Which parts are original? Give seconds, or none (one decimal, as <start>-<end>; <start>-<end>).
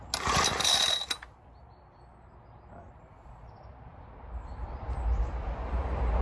0.0-3.9